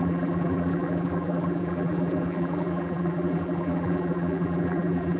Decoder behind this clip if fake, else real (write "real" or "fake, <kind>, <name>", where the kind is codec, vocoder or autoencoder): fake, vocoder, BigVGAN v2